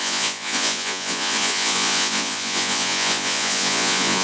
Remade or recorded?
remade